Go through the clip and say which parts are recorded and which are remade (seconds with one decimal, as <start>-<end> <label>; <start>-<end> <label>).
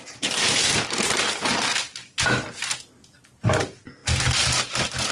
0.0-5.1 recorded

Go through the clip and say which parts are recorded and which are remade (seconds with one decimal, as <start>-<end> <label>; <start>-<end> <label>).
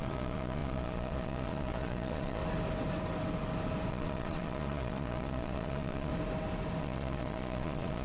0.0-2.4 remade; 2.4-3.9 recorded; 3.9-6.1 remade; 6.1-6.8 recorded; 6.8-8.0 remade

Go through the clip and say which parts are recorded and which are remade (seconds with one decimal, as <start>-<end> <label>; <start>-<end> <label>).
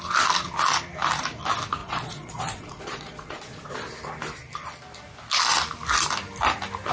0.0-1.8 recorded; 1.8-3.9 remade; 3.9-6.9 recorded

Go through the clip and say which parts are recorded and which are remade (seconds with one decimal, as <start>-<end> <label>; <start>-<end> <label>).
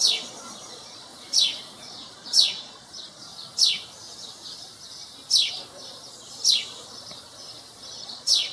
0.0-1.1 remade; 1.1-1.8 recorded; 1.8-3.3 remade; 3.3-7.9 recorded; 7.9-8.5 remade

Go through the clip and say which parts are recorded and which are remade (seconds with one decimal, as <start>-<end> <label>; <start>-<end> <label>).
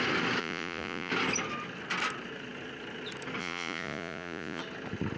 0.0-0.4 recorded; 0.4-1.1 remade; 1.1-3.4 recorded; 3.4-4.6 remade; 4.6-5.2 recorded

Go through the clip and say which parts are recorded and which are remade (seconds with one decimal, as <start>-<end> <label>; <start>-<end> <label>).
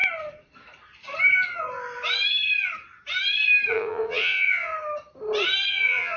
0.0-3.7 recorded; 3.7-4.7 remade; 4.7-5.7 recorded; 5.7-6.2 remade